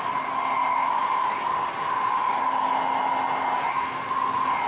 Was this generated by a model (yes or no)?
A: no